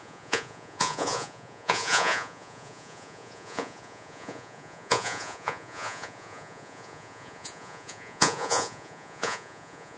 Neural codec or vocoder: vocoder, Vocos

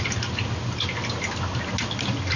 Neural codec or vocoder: none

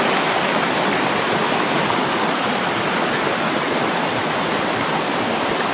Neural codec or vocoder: none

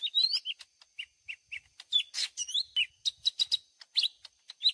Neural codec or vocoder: none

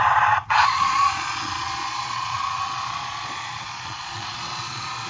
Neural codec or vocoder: vocoder, Vocos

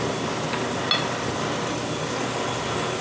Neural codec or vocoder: none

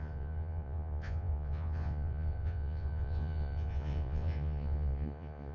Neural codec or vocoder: vocoder, Vocos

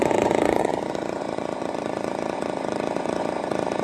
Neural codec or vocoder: vocoder, Vocos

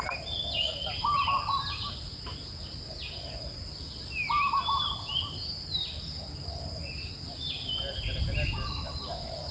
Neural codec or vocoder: none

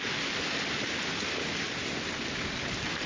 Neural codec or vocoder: none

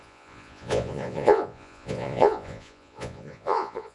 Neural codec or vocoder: vocoder, Vocos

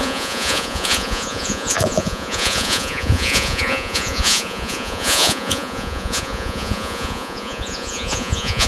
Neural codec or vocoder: vocoder, Vocos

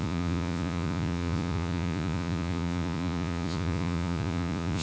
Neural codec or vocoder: vocoder, Vocos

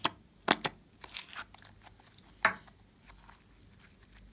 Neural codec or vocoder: none